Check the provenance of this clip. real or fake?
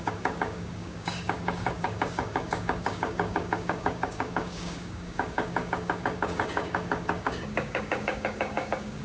fake